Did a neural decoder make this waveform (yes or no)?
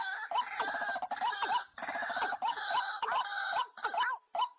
no